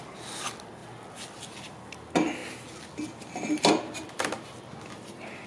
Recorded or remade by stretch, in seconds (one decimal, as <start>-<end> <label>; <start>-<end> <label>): 0.0-5.5 recorded